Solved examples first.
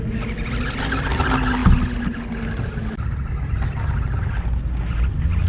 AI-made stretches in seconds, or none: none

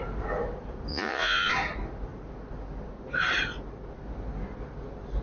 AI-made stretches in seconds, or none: 0.9-1.5 (vocoder, Vocos)

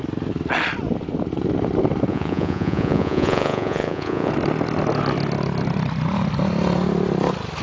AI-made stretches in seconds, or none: 2.1-4.3 (vocoder, Vocos)

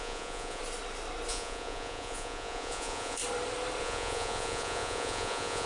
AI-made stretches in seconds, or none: 0.0-0.6 (vocoder, Vocos); 1.3-3.2; 3.8-5.7

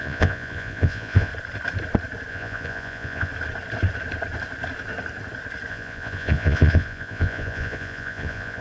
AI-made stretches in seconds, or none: 0.0-1.3 (vocoder, Vocos); 2.3-3.3; 5.7-8.6

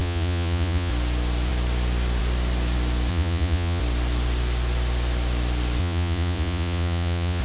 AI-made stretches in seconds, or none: 0.0-0.9 (vocoder, Vocos); 3.1-3.8; 5.8-7.4

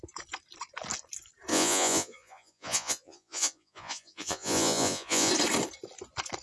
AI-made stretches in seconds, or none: 1.5-5.3 (vocoder, Vocos)

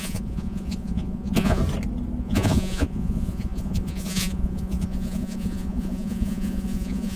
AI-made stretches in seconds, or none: 0.0-1.6 (vocoder, Vocos); 2.2-7.2